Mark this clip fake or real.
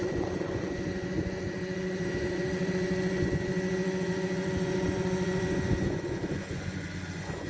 fake